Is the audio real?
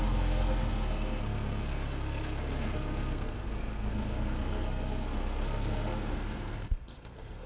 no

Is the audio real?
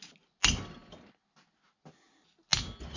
yes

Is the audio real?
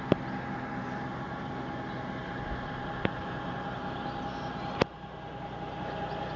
yes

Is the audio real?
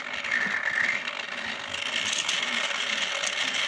yes